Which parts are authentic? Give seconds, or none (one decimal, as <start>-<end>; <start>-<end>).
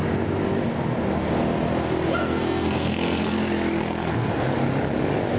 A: 0.0-2.2; 3.3-3.8; 4.3-5.4